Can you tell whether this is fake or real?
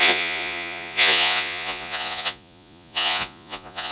fake